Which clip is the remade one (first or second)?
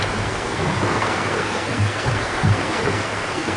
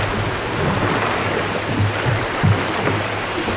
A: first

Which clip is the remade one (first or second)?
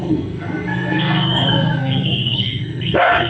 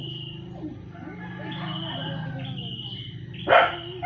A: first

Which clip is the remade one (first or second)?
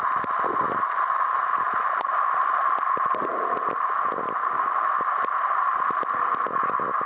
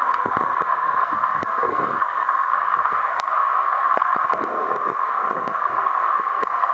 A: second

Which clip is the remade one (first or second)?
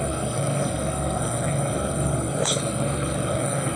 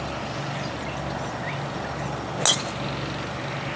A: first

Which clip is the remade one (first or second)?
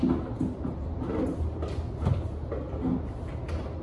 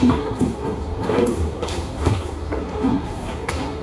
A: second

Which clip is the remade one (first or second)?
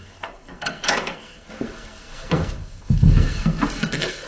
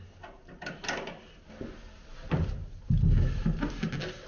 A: first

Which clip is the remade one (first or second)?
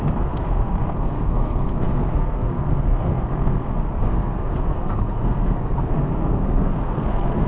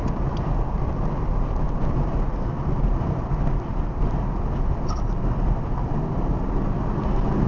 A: first